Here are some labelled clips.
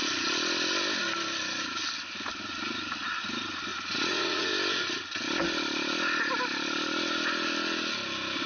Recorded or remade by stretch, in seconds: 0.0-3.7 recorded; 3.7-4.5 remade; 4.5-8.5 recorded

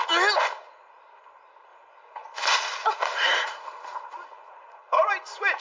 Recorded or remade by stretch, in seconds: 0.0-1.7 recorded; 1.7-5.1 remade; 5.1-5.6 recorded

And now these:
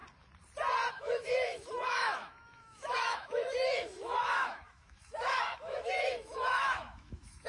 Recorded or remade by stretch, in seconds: 0.0-0.9 recorded; 0.9-7.5 remade